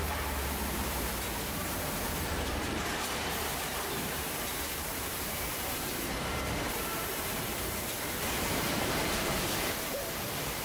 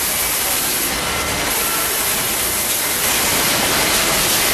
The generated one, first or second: first